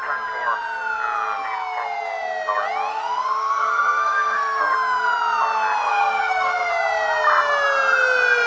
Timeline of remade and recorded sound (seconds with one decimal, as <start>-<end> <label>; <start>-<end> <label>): 0.0-2.9 recorded; 2.9-4.6 remade; 4.6-5.9 recorded; 5.9-6.7 remade; 6.7-8.5 recorded